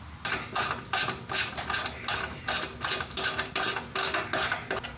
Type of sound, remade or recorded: recorded